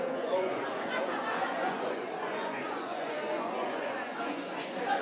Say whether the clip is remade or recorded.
remade